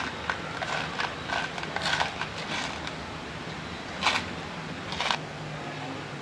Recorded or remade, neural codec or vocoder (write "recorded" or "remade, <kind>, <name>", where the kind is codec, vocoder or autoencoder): recorded